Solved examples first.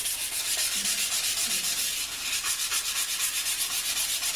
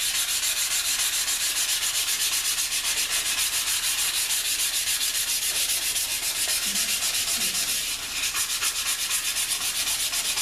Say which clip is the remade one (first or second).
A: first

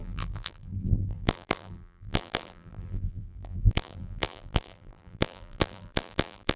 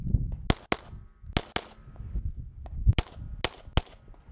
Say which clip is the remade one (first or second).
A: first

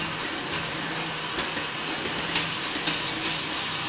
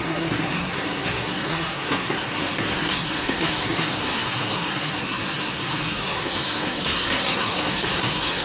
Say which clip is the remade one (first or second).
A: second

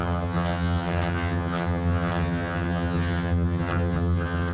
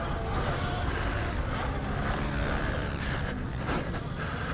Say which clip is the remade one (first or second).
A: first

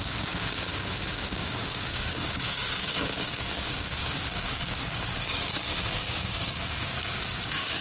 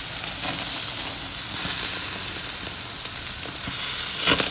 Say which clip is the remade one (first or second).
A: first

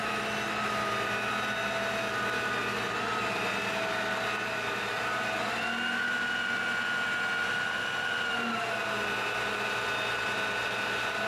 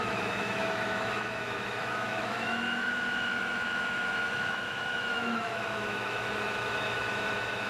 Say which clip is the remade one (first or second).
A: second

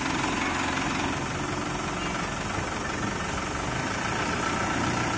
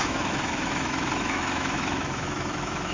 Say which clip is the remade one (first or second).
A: second